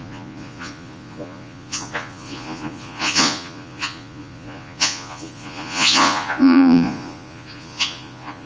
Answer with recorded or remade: remade